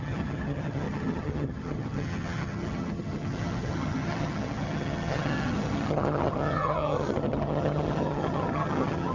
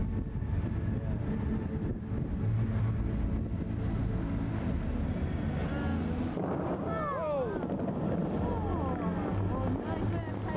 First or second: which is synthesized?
first